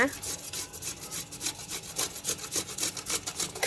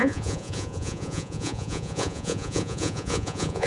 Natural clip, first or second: first